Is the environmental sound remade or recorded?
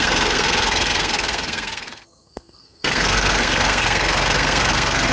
remade